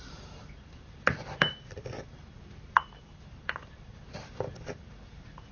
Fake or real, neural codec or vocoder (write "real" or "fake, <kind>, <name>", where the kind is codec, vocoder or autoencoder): fake, vocoder, BigVGAN v2